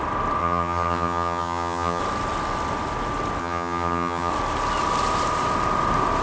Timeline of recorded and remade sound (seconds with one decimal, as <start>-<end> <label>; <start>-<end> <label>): 0.0-0.4 recorded; 0.4-2.0 remade; 2.0-3.4 recorded; 3.4-4.3 remade; 4.3-6.2 recorded